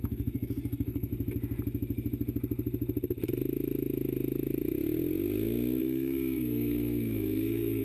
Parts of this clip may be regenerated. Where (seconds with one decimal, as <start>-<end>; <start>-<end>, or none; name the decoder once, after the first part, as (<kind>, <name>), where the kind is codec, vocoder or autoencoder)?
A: 0.0-1.1 (codec, SNAC); 5.8-7.8